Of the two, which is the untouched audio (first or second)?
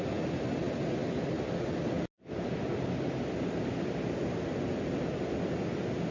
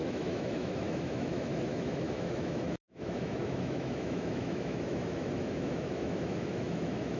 first